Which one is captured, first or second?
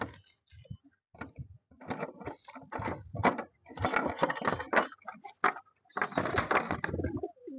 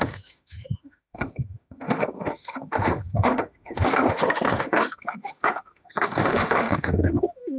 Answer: first